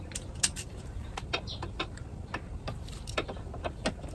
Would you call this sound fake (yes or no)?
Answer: no